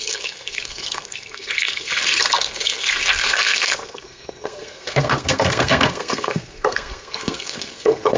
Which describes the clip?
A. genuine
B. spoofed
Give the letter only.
B